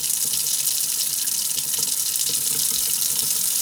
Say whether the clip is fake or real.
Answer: fake